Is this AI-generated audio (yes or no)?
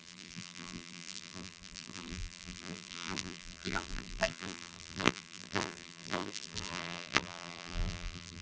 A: yes